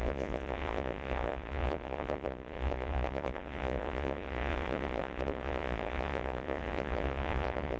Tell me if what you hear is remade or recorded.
remade